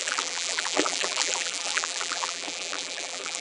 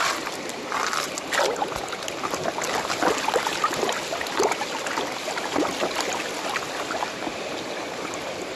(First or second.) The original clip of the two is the second